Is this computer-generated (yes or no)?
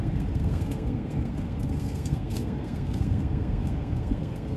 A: yes